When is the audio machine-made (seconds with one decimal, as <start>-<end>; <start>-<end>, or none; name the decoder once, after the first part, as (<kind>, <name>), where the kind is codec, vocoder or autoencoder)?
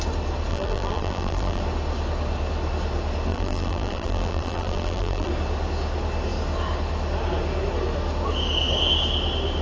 0.5-1.6 (vocoder, BigVGAN v2); 3.3-5.3